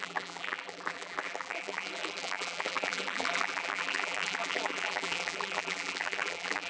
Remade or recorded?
remade